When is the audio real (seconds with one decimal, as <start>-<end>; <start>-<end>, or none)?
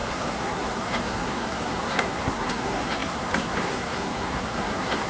none